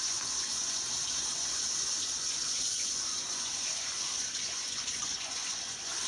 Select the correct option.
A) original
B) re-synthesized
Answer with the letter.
B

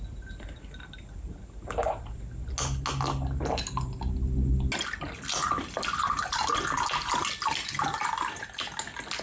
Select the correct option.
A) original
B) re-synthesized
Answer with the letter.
A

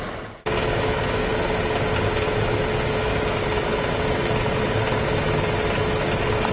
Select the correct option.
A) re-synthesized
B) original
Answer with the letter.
B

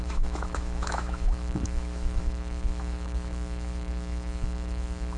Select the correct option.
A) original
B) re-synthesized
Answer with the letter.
B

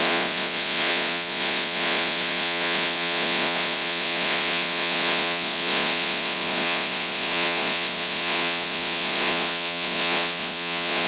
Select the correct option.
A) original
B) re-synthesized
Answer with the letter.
B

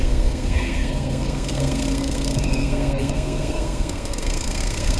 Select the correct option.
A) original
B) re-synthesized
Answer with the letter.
B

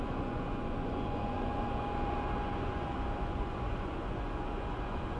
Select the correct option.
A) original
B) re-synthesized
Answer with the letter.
B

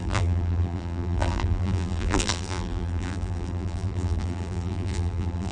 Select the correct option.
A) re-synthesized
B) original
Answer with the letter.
A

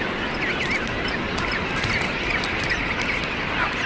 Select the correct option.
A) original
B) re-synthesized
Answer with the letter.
A